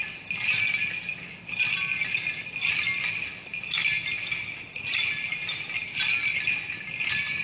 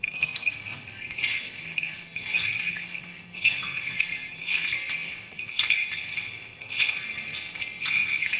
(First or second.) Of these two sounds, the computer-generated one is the second